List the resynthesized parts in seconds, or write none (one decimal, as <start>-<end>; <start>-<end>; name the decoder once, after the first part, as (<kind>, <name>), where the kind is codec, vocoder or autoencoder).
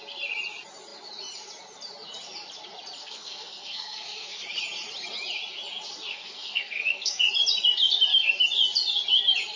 3.0-4.4 (codec, SNAC); 6.1-7.3